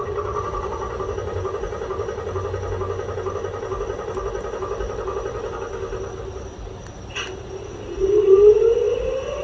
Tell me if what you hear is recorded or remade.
recorded